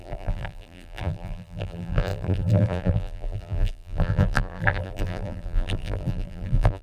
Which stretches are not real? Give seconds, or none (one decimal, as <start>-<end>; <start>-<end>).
0.0-6.8

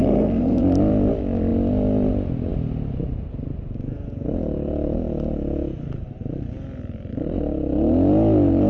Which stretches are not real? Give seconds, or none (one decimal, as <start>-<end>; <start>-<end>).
0.0-0.6